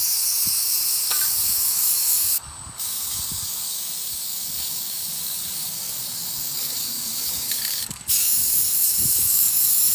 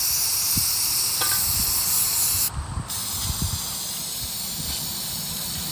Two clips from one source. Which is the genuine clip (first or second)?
second